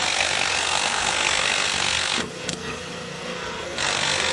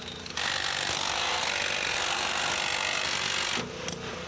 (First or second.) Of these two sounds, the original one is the second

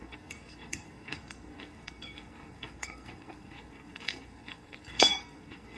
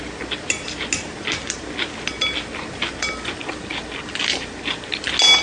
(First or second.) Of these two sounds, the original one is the second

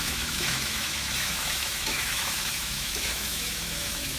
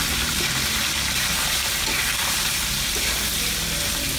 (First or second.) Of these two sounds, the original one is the second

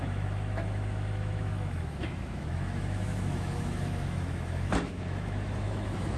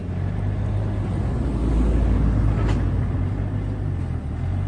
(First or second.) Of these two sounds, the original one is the second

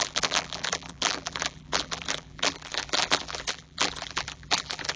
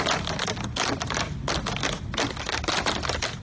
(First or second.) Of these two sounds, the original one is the second